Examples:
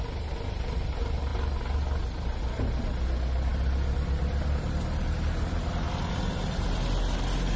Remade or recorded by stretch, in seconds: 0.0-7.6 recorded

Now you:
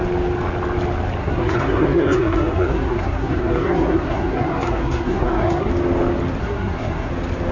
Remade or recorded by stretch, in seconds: 0.0-1.2 recorded; 1.2-5.7 remade; 5.7-6.4 recorded; 6.4-7.1 remade; 7.1-7.5 recorded

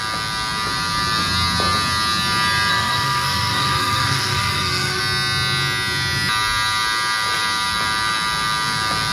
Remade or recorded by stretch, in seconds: 0.0-2.7 recorded; 2.7-5.0 remade; 5.0-9.1 recorded

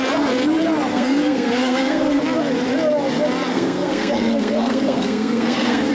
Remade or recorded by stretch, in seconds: 0.0-0.9 recorded; 0.9-2.2 remade; 2.2-3.5 recorded; 3.5-5.9 remade

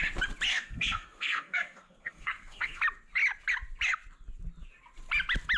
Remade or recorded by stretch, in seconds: 0.0-0.5 recorded; 0.5-2.8 remade; 2.8-5.6 recorded

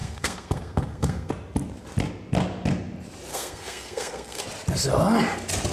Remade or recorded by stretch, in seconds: 0.0-1.3 remade; 1.3-3.3 recorded; 3.3-4.4 remade; 4.4-5.7 recorded

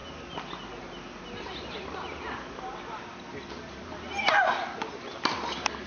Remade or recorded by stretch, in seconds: 0.0-5.9 recorded

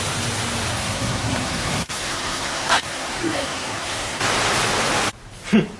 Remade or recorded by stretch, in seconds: 0.0-0.7 recorded; 0.7-4.2 remade; 4.2-5.8 recorded